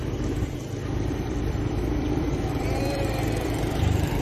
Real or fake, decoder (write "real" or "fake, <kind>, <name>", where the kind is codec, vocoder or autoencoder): fake, vocoder, BigVGAN v2